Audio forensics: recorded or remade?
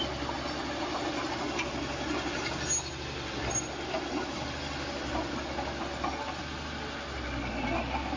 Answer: recorded